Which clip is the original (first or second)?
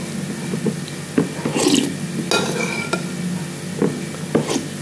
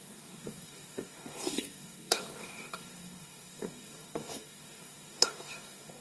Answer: first